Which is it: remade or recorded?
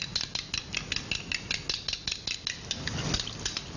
recorded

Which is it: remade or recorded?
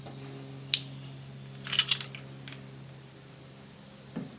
recorded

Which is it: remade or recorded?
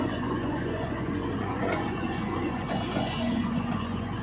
remade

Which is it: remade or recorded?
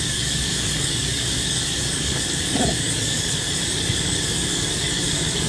remade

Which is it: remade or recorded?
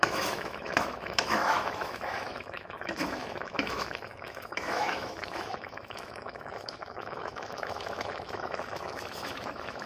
remade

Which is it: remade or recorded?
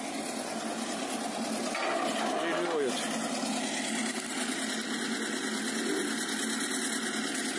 recorded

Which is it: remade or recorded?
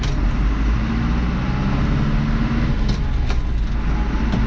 recorded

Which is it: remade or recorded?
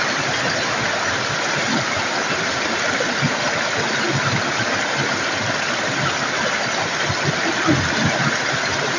recorded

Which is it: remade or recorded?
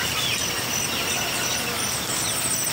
recorded